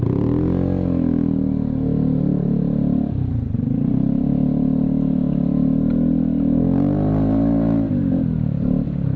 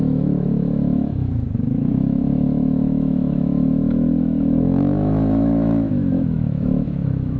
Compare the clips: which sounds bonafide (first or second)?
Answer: first